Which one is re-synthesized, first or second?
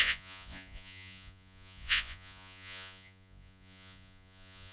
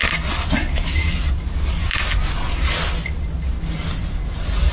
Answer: first